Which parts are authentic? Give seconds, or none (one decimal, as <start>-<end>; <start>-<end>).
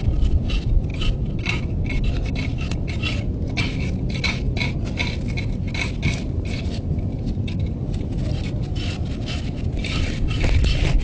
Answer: 0.0-11.0